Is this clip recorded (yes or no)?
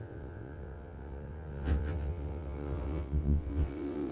no